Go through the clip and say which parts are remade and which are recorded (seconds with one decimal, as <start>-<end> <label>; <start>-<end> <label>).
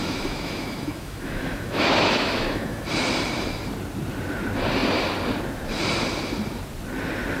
0.0-2.8 remade; 2.8-7.4 recorded